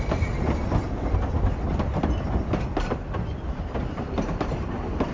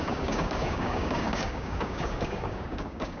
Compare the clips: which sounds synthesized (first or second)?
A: second